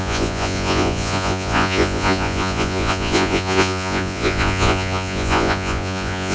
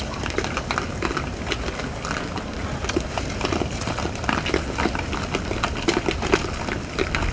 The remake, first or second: first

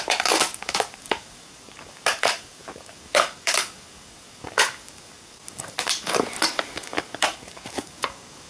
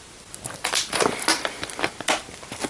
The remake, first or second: first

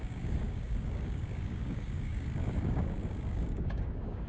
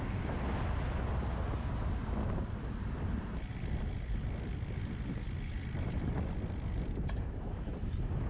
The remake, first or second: first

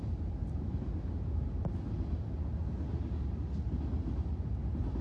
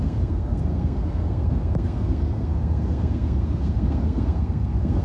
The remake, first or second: second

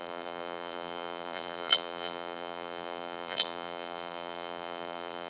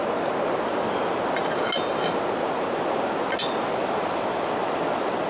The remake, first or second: first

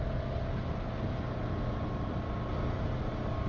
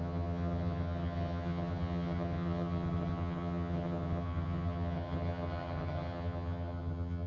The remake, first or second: second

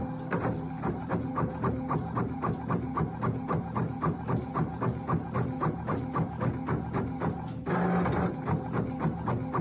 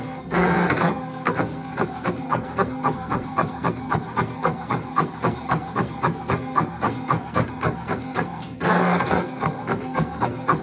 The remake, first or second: second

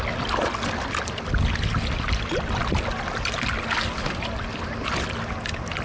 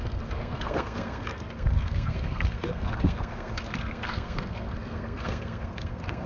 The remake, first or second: second